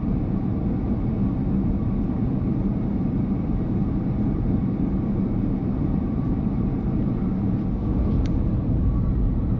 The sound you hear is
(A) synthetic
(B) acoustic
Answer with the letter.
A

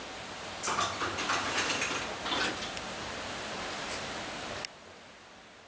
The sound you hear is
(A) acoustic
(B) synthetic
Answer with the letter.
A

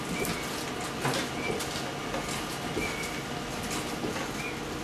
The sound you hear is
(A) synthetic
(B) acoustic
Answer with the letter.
B